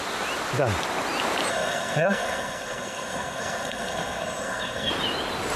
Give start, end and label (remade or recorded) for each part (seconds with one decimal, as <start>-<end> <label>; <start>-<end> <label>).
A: 0.0-1.5 recorded; 1.5-4.9 remade; 4.9-5.6 recorded